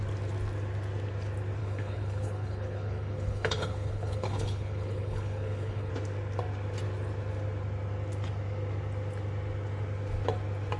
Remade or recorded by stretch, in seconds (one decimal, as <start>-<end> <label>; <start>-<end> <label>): 0.0-1.6 recorded; 1.6-5.9 remade; 5.9-10.8 recorded